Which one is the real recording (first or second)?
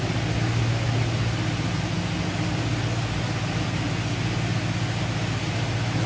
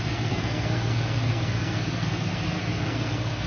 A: first